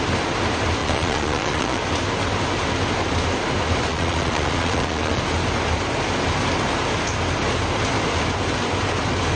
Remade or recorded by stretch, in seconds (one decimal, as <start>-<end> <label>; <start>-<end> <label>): 0.0-0.8 recorded; 0.8-1.8 remade; 1.8-3.9 recorded; 3.9-5.2 remade; 5.2-9.4 recorded